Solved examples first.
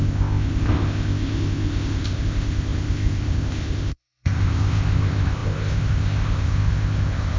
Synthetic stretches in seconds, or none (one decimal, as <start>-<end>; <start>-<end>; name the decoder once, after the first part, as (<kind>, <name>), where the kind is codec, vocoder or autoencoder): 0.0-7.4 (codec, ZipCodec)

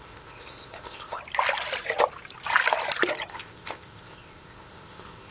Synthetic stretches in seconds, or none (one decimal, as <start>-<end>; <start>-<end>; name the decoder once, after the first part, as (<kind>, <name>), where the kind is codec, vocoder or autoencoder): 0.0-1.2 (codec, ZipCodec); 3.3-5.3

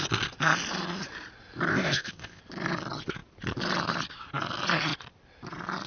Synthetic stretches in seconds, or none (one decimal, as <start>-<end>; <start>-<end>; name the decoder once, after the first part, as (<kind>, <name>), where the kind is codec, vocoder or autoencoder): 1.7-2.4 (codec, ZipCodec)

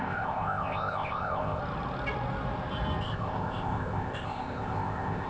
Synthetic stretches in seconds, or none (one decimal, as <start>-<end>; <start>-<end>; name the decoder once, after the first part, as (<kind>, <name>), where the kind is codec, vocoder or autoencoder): 0.0-1.6 (codec, ZipCodec); 3.0-5.3

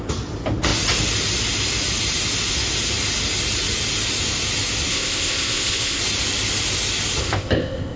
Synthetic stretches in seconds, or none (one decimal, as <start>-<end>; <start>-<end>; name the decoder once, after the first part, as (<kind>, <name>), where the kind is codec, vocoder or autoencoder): 4.9-6.0 (codec, ZipCodec); 7.2-8.0

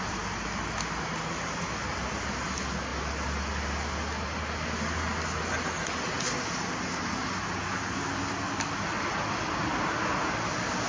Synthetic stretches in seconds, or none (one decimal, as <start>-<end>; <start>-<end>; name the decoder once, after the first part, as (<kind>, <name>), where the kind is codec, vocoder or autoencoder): none

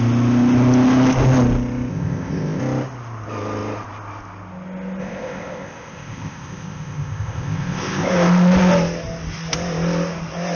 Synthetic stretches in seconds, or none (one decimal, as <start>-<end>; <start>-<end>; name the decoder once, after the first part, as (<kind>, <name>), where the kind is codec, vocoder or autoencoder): 1.9-2.6 (codec, ZipCodec); 5.0-8.1

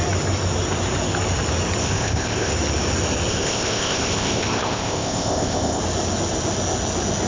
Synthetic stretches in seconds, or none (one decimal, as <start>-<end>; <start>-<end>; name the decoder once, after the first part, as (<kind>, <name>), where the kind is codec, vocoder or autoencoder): 1.8-2.5 (codec, ZipCodec); 3.3-5.8